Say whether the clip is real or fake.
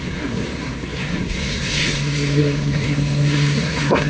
fake